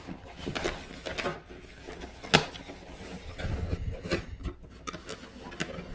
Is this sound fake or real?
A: real